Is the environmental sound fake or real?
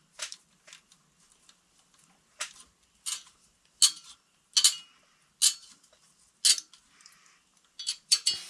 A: real